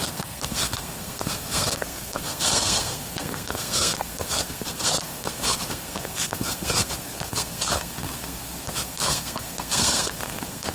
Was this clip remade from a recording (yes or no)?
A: yes